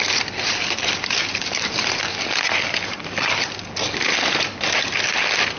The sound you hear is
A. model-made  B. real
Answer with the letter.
B